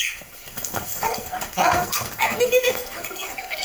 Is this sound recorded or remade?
remade